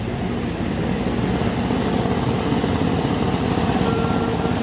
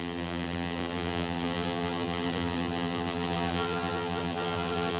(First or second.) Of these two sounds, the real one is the first